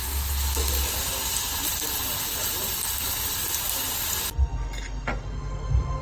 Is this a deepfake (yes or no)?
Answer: no